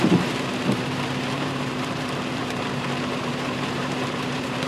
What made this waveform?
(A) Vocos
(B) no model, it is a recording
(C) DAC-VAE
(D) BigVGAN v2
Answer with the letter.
D